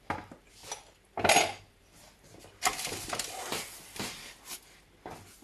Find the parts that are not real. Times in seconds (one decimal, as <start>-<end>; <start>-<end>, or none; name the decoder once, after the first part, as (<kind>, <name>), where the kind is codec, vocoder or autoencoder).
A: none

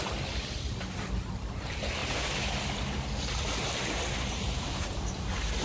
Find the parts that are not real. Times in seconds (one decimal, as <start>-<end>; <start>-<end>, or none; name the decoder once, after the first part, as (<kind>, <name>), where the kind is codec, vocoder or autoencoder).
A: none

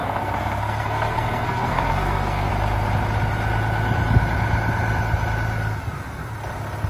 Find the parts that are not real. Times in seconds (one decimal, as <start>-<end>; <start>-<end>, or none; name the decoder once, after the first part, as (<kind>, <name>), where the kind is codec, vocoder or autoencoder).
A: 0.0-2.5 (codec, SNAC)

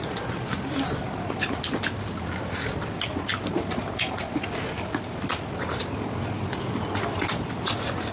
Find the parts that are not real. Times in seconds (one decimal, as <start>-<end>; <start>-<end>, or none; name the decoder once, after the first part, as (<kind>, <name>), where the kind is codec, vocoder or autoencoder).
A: none